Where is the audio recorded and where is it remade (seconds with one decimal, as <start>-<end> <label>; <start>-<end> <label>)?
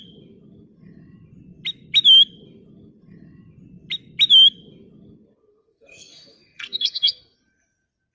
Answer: 0.0-5.5 recorded; 5.5-7.4 remade; 7.4-8.1 recorded